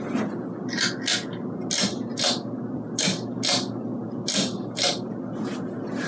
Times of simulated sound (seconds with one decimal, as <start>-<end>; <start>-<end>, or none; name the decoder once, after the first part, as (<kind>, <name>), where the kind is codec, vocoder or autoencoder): none